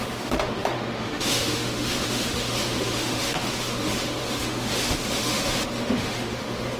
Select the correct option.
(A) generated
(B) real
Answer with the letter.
A